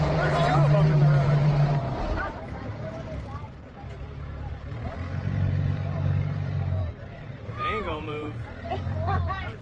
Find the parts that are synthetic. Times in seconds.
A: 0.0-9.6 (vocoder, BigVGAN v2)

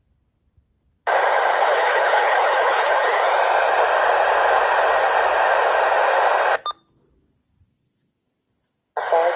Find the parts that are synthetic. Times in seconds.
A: 1.7-3.2 (codec, HILCodec)

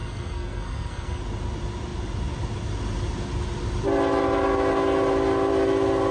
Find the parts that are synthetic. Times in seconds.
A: 0.0-1.2 (codec, SNAC)

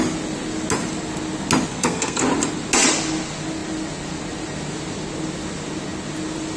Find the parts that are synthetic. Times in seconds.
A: 1.7-2.2 (codec, SNAC)